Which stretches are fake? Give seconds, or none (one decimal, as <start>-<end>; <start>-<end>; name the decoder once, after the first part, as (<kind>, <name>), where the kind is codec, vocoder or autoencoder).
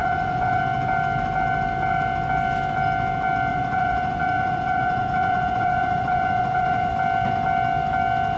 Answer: 0.0-0.6 (vocoder, Vocos); 3.5-6.9